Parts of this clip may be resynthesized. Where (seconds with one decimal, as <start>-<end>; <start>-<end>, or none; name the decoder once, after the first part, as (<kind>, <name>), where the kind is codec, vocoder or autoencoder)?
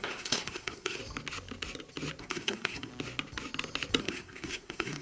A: 0.0-1.0 (codec, SNAC); 2.2-2.9; 4.0-5.0